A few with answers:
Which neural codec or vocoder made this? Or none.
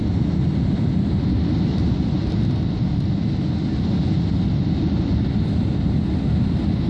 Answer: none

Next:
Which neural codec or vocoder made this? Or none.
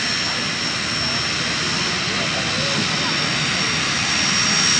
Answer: none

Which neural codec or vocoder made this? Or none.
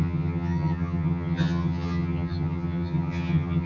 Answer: vocoder, HiFi-GAN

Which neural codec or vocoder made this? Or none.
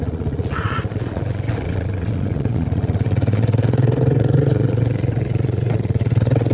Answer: vocoder, Vocos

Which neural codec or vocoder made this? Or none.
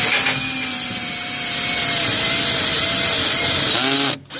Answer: none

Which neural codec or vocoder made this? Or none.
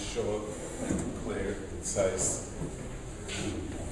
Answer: none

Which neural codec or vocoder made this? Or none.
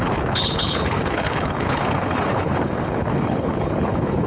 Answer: codec, HILCodec